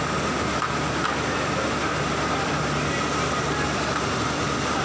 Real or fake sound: real